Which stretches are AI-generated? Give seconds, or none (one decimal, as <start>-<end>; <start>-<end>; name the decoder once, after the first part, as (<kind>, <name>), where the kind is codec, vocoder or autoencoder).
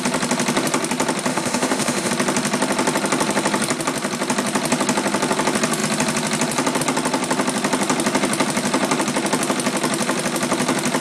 1.3-2.1 (autoencoder, DAC-VAE)